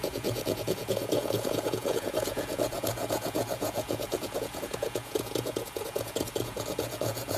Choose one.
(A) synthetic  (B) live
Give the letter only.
A